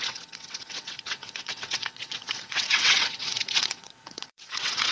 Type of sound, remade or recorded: remade